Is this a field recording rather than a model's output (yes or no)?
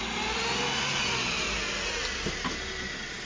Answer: yes